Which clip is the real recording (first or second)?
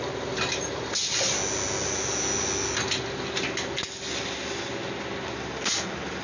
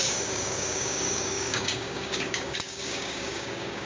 first